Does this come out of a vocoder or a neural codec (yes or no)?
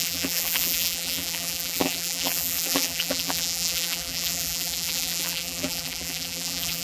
yes